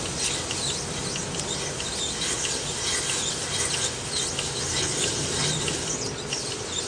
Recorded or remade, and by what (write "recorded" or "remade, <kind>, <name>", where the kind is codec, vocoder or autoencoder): recorded